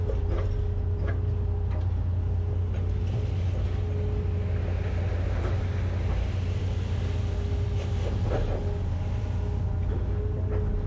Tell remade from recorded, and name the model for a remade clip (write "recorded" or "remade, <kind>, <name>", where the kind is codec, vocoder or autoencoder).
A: recorded